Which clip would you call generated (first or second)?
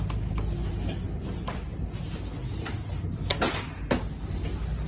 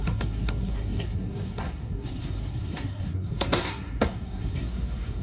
second